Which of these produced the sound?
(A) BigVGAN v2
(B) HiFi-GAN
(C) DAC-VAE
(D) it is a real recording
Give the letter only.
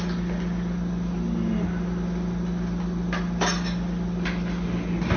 D